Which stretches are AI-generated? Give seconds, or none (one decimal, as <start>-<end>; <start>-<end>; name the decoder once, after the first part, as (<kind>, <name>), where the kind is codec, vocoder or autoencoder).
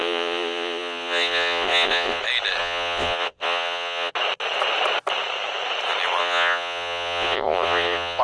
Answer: 0.0-2.2 (vocoder, Vocos); 2.6-4.1; 6.2-8.2